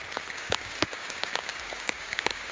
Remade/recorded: remade